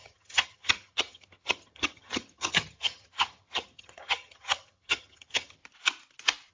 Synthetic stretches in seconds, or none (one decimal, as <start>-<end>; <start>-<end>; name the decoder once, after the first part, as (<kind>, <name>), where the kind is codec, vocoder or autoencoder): 0.0-5.6 (vocoder, HiFi-GAN)